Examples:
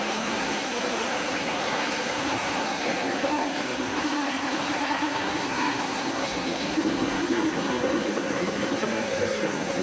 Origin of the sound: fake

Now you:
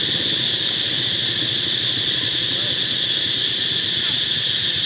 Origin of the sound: real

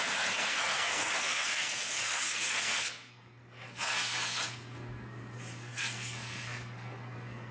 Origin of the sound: fake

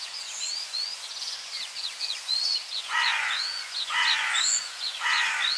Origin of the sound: fake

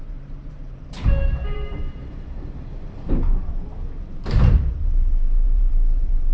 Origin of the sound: fake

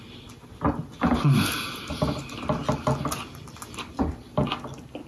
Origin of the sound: real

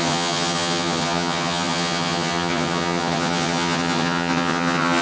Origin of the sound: fake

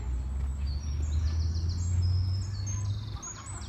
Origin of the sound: real